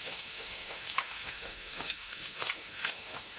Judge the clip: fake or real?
fake